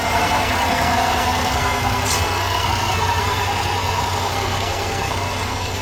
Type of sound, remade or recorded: remade